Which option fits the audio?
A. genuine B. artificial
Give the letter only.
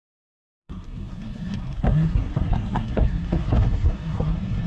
B